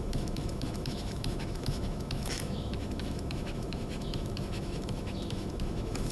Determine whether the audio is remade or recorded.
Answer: remade